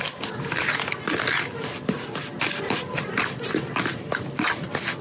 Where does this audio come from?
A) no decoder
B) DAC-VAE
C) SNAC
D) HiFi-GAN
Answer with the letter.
A